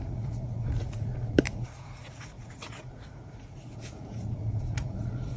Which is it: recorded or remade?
remade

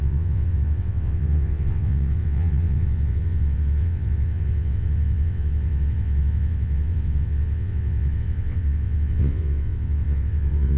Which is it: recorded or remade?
remade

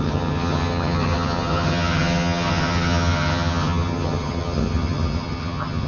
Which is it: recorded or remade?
remade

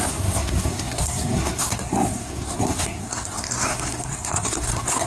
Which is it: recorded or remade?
remade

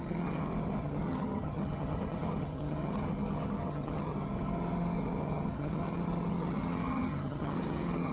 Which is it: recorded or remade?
remade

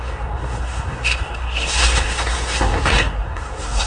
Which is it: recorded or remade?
remade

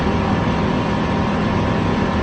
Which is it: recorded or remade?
recorded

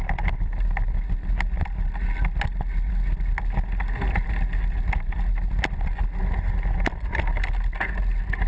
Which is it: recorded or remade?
recorded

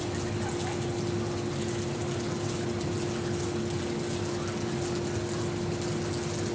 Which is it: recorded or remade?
recorded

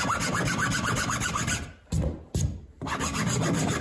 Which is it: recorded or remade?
recorded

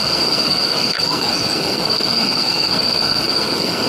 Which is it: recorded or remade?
remade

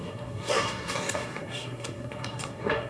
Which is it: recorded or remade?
remade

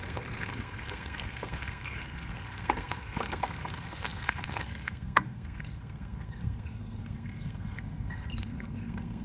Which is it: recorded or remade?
remade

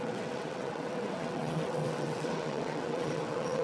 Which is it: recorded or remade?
remade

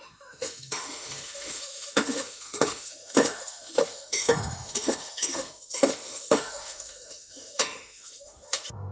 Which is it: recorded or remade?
remade